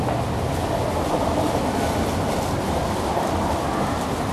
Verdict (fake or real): real